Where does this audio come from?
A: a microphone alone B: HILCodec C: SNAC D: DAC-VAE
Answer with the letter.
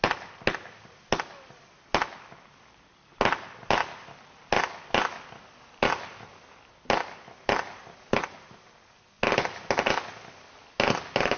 A